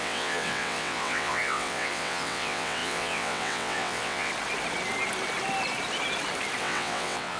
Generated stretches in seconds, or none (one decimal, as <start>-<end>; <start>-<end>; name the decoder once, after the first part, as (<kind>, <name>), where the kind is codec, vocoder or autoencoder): 0.0-4.3 (vocoder, WaveNeXt); 6.6-7.4